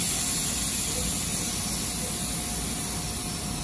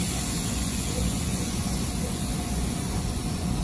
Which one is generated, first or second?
second